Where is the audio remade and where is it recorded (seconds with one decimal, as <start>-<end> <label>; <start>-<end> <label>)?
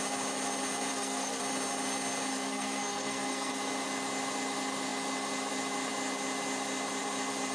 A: 0.0-0.9 recorded; 0.9-1.4 remade; 1.4-2.3 recorded; 2.3-3.5 remade; 3.5-7.5 recorded